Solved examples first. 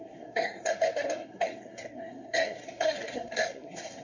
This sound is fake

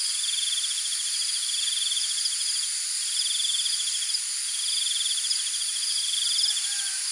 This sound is real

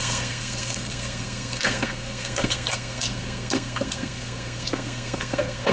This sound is fake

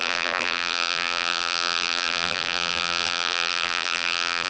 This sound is fake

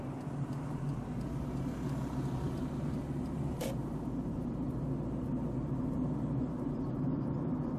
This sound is real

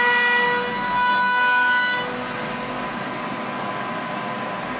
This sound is real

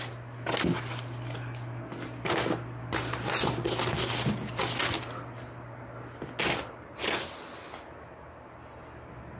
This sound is real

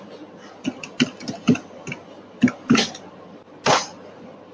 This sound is real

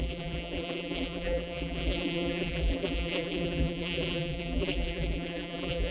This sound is fake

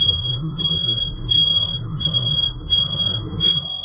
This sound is fake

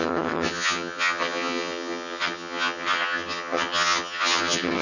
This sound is fake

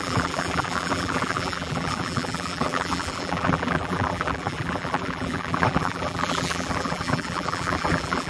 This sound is fake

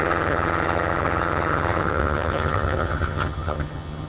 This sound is fake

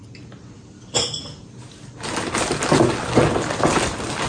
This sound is real